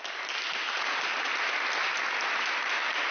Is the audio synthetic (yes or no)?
no